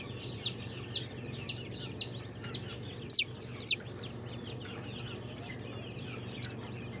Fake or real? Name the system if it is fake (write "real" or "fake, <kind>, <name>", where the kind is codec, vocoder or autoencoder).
real